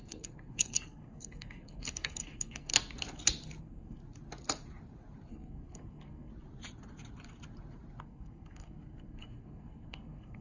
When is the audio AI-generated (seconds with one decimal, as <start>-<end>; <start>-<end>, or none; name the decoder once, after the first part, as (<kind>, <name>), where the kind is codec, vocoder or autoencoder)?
0.0-2.7 (codec, SNAC); 3.6-4.0; 5.3-6.3; 8.0-10.4